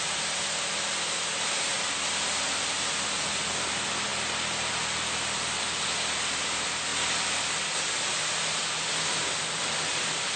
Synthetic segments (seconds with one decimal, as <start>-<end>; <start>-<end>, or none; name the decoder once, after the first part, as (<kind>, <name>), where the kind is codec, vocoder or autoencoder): none